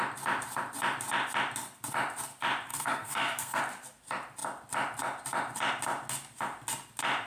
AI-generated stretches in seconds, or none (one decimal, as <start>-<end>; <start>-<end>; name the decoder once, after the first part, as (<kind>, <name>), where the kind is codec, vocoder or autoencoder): 2.7-3.6 (codec, SNAC)